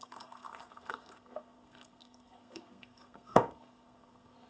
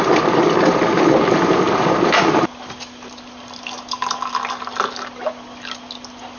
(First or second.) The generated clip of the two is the first